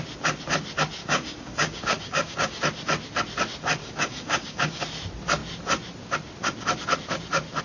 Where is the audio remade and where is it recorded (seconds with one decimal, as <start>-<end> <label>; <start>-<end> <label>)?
0.0-1.0 recorded; 1.0-2.6 remade; 2.6-3.8 recorded; 3.8-4.8 remade; 4.8-7.6 recorded